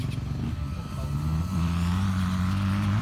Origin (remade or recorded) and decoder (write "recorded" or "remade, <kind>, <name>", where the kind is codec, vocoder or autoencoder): recorded